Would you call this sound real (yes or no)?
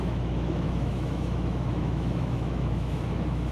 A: no